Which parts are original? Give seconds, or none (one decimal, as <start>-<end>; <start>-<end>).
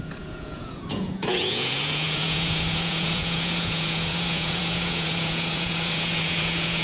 none